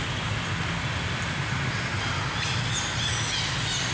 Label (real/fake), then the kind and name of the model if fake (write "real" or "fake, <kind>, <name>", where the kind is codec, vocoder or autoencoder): real